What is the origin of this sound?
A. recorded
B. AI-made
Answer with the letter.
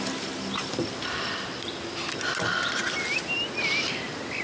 A